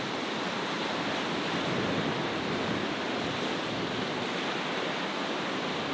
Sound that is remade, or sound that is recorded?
recorded